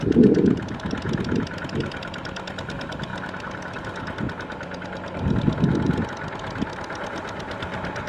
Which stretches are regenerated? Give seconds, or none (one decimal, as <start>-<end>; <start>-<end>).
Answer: none